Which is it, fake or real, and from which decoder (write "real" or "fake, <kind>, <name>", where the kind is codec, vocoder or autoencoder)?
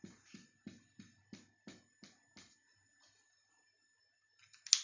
real